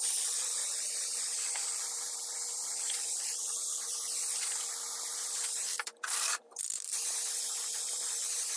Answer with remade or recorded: remade